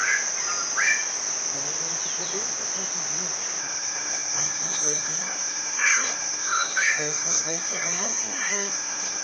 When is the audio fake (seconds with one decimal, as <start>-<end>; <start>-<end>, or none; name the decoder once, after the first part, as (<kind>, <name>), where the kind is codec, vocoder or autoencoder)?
3.6-9.2 (codec, SNAC)